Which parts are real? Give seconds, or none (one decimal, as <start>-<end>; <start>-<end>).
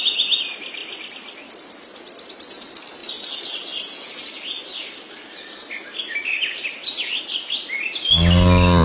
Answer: 0.0-8.8